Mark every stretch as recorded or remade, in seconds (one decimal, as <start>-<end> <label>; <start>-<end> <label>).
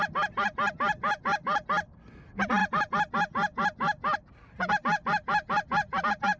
0.0-6.4 recorded